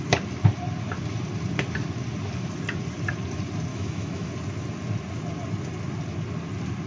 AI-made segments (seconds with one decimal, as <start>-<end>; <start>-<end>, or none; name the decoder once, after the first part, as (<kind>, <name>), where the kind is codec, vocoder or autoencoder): 3.7-4.3 (autoencoder, DAC-VAE)